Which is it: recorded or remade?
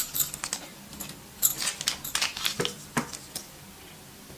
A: recorded